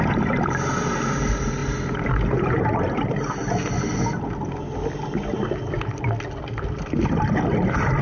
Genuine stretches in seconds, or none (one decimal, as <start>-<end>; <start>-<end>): 0.0-8.0